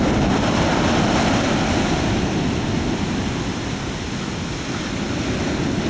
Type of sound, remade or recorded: recorded